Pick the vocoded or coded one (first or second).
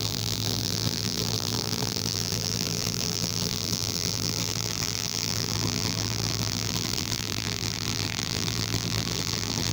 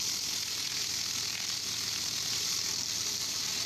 first